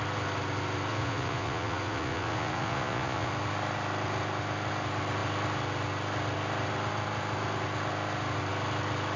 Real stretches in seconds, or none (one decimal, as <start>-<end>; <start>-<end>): 0.0-0.9; 3.3-9.2